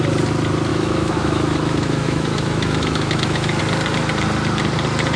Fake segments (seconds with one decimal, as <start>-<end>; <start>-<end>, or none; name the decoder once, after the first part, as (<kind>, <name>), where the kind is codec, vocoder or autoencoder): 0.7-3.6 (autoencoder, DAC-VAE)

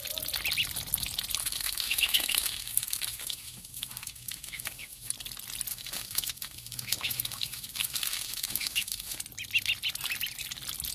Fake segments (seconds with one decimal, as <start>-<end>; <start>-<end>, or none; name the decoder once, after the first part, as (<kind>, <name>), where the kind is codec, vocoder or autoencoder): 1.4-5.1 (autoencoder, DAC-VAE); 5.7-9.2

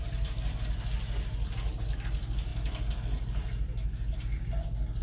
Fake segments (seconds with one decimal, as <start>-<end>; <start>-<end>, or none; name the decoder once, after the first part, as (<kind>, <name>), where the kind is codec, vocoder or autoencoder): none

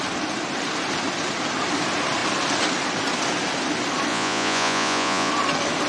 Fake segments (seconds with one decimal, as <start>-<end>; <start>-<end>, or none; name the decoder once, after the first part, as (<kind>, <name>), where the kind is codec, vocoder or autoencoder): 4.1-5.3 (vocoder, Vocos)

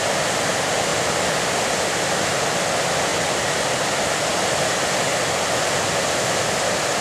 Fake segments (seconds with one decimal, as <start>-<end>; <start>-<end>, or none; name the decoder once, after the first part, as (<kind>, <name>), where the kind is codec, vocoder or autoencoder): 3.1-4.1 (vocoder, BigVGAN v2)

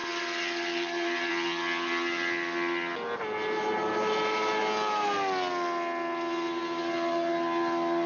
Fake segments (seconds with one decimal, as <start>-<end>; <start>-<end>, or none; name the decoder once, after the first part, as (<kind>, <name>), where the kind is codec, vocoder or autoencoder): 0.0-1.3 (vocoder, BigVGAN v2); 3.4-4.6

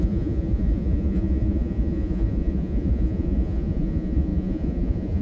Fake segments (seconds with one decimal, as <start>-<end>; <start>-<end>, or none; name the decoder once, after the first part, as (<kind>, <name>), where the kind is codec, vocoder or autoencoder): 0.0-5.2 (vocoder, Vocos)